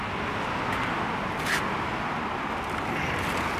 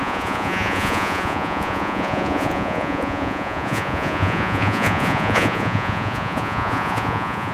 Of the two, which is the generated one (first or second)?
second